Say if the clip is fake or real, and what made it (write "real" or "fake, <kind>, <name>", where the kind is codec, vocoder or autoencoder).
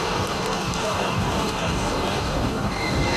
fake, codec, DAC